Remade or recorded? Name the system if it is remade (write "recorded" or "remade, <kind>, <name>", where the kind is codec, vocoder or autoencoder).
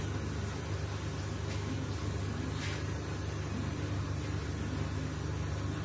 recorded